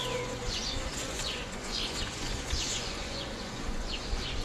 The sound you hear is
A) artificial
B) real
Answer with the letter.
A